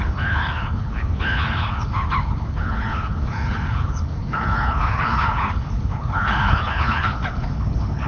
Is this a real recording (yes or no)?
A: no